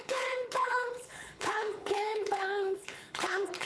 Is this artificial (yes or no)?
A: yes